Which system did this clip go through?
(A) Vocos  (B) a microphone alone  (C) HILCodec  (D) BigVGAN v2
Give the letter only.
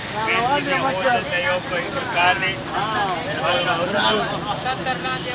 B